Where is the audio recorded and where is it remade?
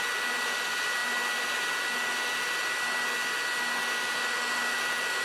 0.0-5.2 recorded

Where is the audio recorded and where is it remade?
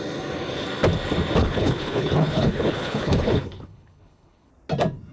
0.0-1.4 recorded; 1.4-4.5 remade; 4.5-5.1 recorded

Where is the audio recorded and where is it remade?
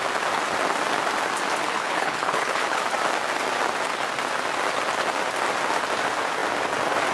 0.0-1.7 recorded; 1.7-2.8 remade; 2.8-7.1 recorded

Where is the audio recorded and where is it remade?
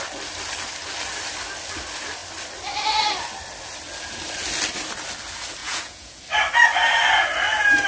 0.0-5.6 recorded; 5.6-6.2 remade; 6.2-7.9 recorded